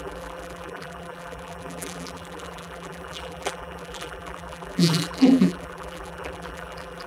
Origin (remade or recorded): remade